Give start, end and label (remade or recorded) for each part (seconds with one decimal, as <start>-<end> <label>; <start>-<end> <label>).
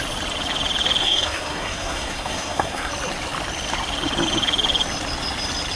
0.0-1.0 recorded; 1.0-2.9 remade; 2.9-5.8 recorded